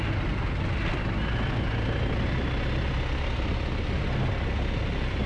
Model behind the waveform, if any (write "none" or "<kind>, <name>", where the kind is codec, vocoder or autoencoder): none